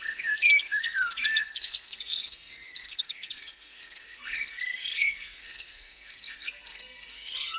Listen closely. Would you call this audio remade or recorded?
remade